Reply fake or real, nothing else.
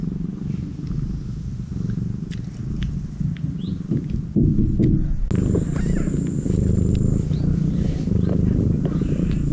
real